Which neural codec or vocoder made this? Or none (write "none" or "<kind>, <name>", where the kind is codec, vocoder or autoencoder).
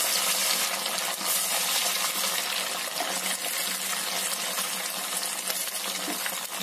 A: none